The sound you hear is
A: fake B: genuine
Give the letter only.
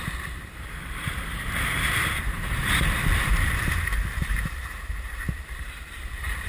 A